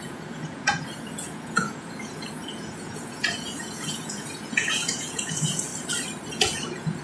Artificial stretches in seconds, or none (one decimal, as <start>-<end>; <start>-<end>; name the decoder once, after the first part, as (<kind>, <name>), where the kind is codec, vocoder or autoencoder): 0.0-5.7 (vocoder, Vocos); 6.3-7.0